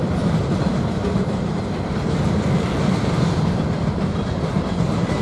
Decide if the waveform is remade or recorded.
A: recorded